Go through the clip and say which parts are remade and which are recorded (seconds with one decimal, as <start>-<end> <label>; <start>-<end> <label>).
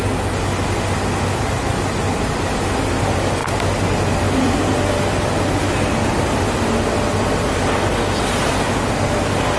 0.0-9.6 recorded